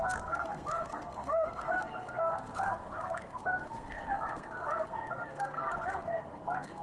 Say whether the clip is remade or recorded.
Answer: remade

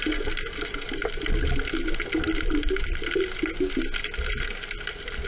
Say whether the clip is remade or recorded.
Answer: recorded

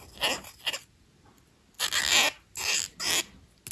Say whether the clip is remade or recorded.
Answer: recorded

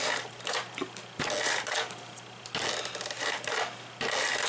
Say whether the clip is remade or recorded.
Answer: recorded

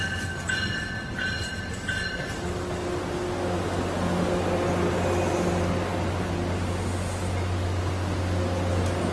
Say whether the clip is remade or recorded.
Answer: recorded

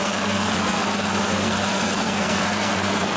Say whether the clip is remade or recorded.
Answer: remade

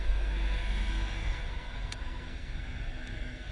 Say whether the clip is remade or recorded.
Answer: remade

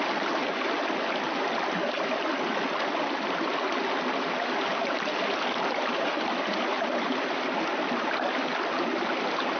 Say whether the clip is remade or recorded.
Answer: recorded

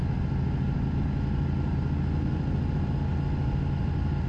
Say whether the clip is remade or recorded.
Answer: recorded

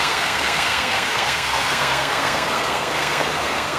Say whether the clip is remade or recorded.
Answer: remade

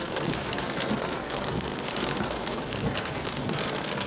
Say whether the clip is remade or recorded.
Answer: remade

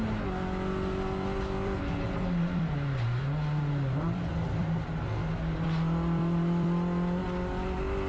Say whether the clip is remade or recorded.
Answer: recorded